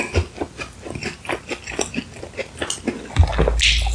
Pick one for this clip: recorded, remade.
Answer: recorded